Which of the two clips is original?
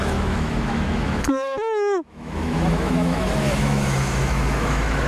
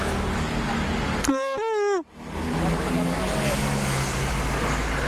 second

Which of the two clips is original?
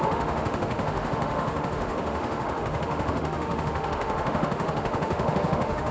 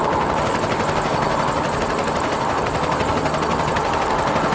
second